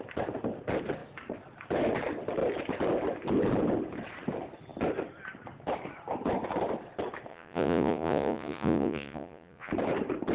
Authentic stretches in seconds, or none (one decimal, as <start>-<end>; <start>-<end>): 0.0-7.3; 9.7-10.3